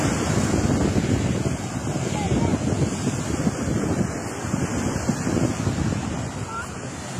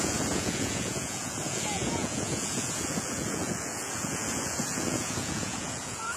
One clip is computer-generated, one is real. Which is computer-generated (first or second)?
second